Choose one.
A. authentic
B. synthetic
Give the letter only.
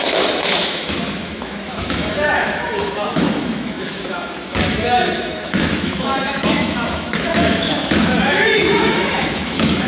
B